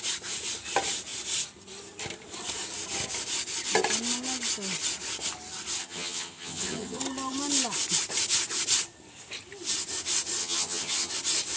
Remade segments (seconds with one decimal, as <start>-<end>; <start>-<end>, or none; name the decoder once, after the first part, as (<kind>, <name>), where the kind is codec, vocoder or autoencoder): 5.8-7.0 (vocoder, HiFi-GAN); 10.4-11.1